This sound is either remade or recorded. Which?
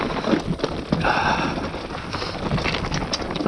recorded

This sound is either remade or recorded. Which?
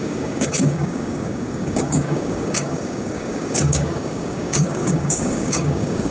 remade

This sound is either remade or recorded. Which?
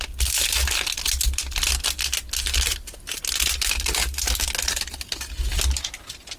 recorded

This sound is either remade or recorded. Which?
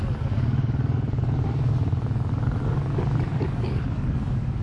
remade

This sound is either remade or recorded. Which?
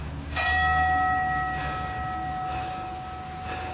recorded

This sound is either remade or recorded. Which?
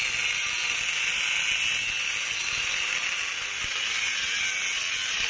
recorded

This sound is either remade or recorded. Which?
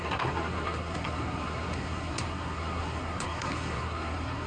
remade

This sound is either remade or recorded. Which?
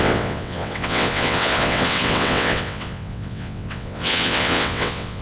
remade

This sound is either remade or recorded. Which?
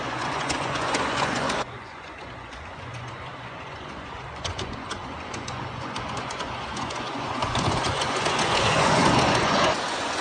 remade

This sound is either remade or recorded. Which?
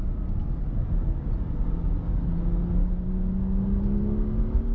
recorded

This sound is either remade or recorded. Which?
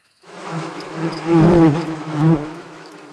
remade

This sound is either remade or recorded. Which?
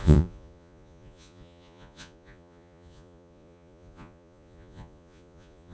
remade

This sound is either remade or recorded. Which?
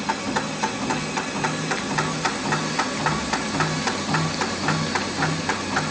recorded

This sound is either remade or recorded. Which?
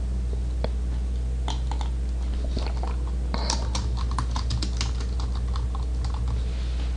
recorded